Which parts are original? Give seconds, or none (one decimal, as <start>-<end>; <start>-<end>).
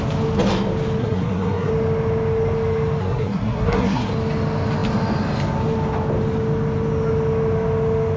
0.0-1.0; 1.7-3.0; 4.1-8.2